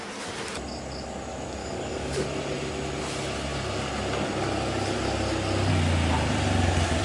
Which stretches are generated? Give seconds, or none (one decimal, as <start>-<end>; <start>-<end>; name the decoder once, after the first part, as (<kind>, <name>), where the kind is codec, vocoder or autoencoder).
1.6-2.2 (codec, DAC)